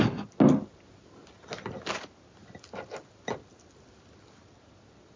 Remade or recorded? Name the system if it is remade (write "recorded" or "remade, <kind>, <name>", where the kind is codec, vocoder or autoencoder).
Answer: recorded